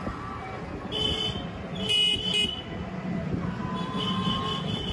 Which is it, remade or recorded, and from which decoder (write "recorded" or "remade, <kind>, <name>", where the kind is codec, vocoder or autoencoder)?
recorded